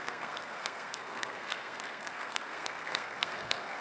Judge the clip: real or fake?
fake